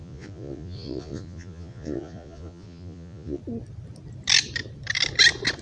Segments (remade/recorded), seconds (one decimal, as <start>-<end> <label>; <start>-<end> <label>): 0.0-3.4 remade; 3.4-5.6 recorded